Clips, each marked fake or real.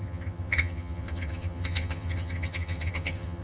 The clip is fake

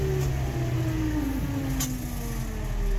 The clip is real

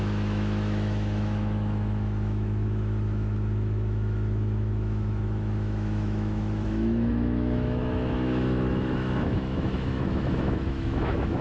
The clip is fake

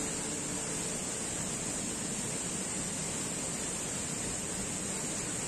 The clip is real